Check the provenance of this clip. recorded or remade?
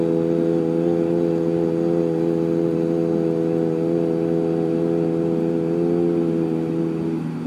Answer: recorded